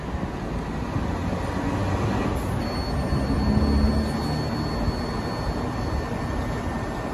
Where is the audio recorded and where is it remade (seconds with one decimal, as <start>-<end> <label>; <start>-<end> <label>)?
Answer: 0.0-7.1 recorded